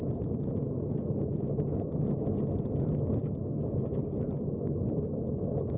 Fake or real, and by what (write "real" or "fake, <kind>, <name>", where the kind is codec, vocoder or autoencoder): real